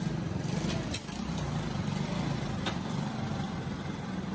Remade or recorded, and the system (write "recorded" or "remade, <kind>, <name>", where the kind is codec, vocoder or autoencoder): remade, vocoder, BigVGAN v2